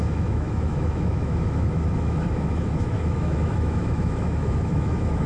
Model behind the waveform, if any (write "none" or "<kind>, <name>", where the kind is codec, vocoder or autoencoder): autoencoder, DAC-VAE